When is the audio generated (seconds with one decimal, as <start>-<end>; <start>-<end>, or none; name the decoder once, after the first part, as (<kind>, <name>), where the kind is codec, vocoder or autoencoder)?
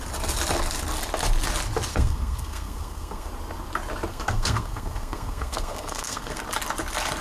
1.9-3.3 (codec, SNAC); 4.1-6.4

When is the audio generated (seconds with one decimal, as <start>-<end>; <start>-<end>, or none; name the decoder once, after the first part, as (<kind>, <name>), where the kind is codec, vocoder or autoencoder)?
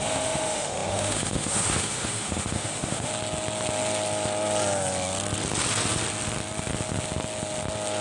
0.0-3.1 (autoencoder, DAC-VAE)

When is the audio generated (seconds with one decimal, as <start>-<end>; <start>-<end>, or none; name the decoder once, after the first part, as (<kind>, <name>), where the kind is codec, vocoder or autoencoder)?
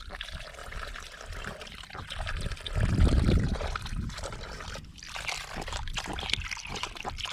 0.6-3.5 (vocoder, BigVGAN v2); 4.9-7.3